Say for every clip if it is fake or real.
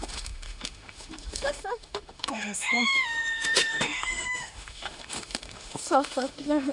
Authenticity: fake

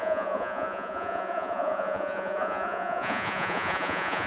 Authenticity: fake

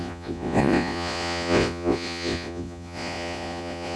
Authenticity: fake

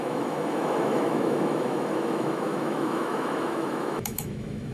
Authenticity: fake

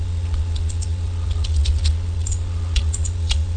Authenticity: fake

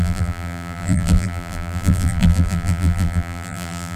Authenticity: fake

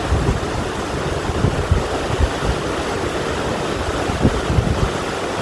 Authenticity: real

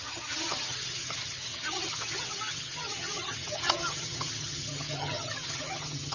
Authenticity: fake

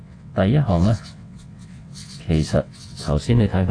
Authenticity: fake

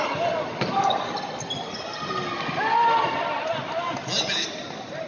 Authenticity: real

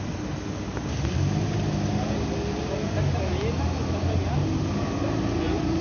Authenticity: real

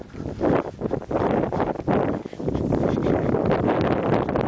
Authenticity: real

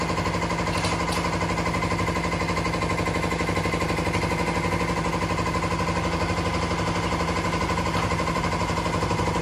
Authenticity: real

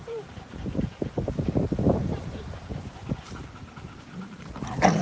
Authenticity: fake